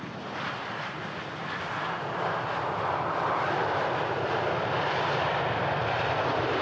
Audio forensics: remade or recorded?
recorded